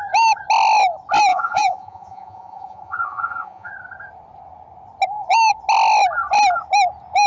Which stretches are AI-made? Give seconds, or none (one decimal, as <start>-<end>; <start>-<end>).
1.3-3.7